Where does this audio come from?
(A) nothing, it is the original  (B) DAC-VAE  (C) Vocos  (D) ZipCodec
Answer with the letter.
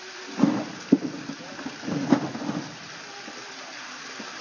A